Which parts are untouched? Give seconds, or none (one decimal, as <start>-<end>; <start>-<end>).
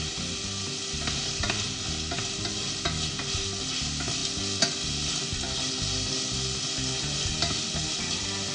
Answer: 0.0-8.5